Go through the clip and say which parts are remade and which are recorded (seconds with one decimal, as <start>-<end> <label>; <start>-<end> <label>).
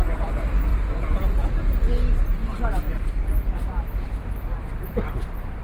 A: 0.0-0.7 recorded; 0.7-1.5 remade; 1.5-2.4 recorded; 2.4-4.2 remade; 4.2-5.6 recorded